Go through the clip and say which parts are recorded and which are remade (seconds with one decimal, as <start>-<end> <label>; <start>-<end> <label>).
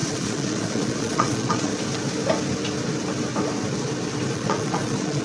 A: 0.0-1.7 remade; 1.7-4.3 recorded; 4.3-5.2 remade